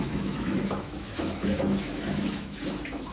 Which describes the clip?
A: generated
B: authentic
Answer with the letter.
A